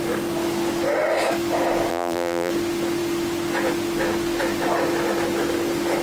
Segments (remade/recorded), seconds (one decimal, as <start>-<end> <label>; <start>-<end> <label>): 0.0-1.9 recorded; 1.9-2.5 remade; 2.5-6.0 recorded